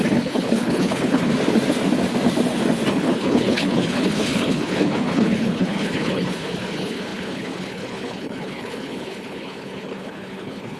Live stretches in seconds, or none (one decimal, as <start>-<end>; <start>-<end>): 1.3-2.9